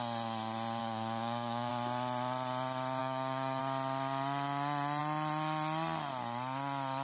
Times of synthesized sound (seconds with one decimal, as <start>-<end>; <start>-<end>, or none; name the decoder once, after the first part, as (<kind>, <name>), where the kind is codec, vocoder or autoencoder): 0.8-1.7 (codec, DAC); 3.0-3.6